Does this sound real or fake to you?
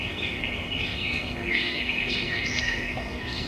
fake